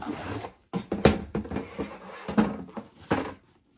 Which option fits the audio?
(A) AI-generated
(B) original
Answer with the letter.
B